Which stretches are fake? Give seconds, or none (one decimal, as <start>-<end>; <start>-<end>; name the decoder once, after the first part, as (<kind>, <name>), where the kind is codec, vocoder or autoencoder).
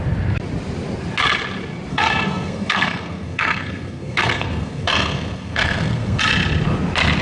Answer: 1.9-6.2 (codec, SNAC)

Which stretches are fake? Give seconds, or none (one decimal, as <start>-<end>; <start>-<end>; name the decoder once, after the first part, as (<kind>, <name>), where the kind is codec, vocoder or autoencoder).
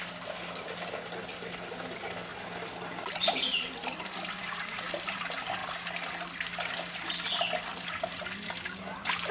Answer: none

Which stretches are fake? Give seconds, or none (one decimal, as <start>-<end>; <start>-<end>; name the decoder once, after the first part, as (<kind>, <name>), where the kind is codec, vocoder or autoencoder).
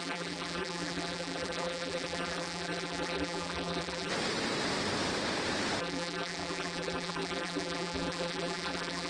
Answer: 0.0-4.1 (vocoder, BigVGAN v2); 5.8-9.1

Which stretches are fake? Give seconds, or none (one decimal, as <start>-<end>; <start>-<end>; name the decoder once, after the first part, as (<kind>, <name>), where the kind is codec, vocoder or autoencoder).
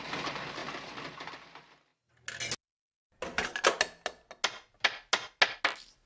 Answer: none